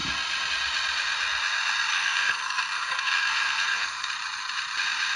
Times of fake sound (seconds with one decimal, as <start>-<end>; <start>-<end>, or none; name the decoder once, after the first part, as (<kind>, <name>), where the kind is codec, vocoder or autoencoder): 1.9-4.1 (codec, SNAC)